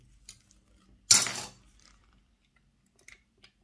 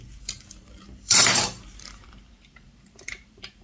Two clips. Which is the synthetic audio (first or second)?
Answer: second